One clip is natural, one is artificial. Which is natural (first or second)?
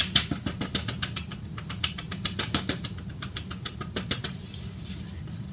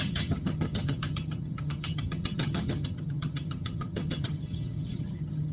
first